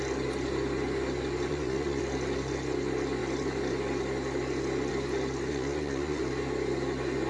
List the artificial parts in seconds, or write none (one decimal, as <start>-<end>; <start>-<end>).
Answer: 1.5-2.0; 5.5-6.2